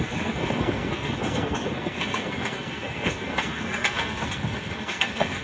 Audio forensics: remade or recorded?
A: remade